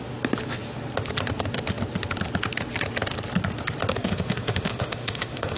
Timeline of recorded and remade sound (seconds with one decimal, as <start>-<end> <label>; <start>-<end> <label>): 0.0-4.0 recorded; 4.0-5.6 remade